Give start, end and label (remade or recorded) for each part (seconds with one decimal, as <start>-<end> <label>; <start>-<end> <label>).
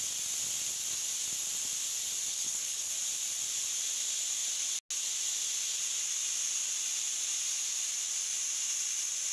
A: 0.0-2.3 recorded; 2.3-2.9 remade; 2.9-9.3 recorded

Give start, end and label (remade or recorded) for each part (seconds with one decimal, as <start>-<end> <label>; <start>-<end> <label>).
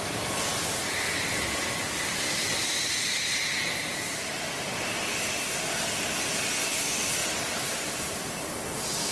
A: 0.0-3.0 recorded; 3.0-5.0 remade; 5.0-7.2 recorded; 7.2-8.4 remade; 8.4-9.1 recorded